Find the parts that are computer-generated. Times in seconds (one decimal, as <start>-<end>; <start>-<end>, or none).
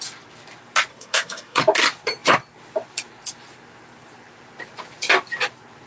0.9-1.6